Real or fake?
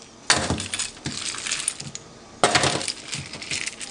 real